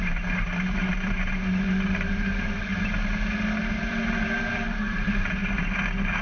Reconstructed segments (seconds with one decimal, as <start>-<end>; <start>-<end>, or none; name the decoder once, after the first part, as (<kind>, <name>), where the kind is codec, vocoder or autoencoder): 0.0-2.7 (vocoder, BigVGAN v2); 3.7-5.4

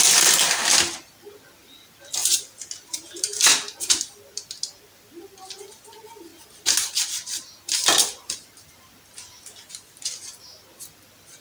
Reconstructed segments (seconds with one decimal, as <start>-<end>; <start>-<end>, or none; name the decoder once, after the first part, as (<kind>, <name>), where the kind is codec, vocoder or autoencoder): 2.2-3.5 (vocoder, BigVGAN v2)

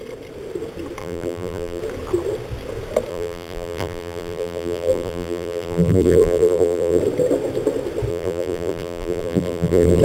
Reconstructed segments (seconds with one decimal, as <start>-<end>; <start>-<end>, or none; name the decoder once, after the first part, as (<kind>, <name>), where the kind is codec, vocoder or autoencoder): 1.0-1.8 (vocoder, BigVGAN v2); 3.1-7.0; 8.1-10.0

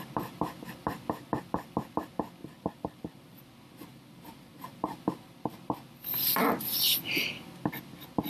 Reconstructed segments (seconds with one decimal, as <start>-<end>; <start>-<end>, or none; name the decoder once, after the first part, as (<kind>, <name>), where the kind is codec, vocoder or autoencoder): 2.4-3.4 (vocoder, BigVGAN v2); 3.9-4.9

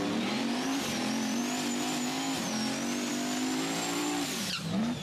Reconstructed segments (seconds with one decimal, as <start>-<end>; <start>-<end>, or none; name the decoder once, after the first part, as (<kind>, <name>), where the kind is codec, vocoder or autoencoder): 0.0-1.4 (vocoder, BigVGAN v2); 3.1-5.0